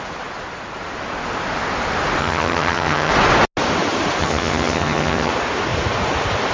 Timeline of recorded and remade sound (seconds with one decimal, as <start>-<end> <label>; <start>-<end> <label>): 0.0-2.2 recorded; 2.2-3.1 remade; 3.1-4.2 recorded; 4.2-5.3 remade; 5.3-6.5 recorded